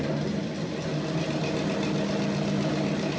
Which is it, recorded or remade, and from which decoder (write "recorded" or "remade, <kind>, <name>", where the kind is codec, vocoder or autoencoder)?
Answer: recorded